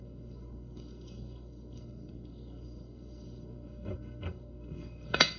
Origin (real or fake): fake